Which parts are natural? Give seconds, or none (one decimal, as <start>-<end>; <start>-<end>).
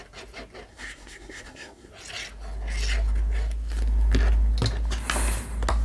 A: 0.0-0.7; 1.9-5.8